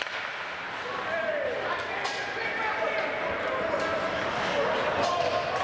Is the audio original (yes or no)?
yes